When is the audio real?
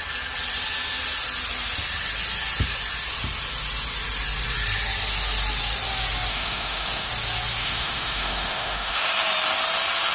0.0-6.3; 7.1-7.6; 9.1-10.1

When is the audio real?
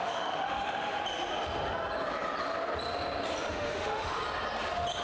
1.0-3.5; 4.2-5.0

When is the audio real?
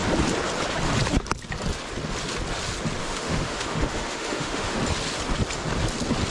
0.0-3.0; 4.8-6.3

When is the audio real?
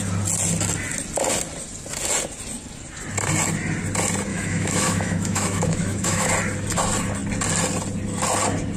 0.0-4.3; 6.3-8.8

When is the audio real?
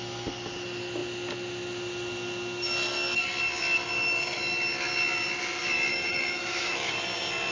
0.0-5.9; 6.9-7.5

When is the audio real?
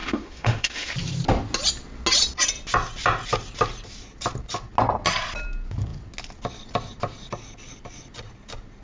0.9-8.8